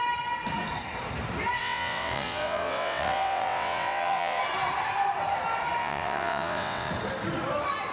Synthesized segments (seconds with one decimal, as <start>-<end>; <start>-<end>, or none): 1.6-4.4; 5.8-6.9